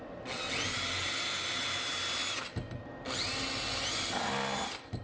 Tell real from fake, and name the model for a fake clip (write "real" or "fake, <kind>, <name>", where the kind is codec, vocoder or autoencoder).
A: real